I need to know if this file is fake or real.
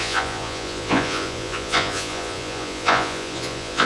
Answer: fake